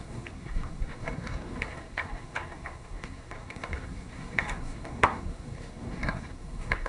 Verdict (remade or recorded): remade